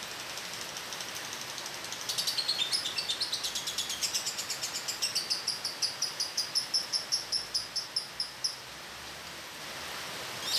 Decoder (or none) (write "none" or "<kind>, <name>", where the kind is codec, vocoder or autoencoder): none